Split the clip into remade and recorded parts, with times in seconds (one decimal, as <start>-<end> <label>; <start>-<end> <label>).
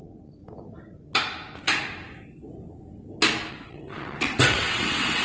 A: 0.0-0.4 remade; 0.4-3.5 recorded; 3.5-5.2 remade